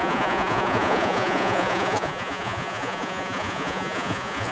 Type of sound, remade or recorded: remade